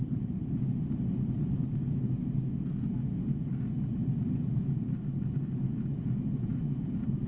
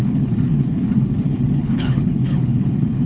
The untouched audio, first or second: first